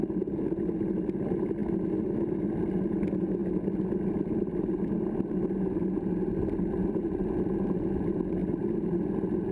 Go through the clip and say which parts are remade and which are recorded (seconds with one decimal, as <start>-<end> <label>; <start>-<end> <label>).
0.0-8.4 recorded; 8.4-9.1 remade; 9.1-9.5 recorded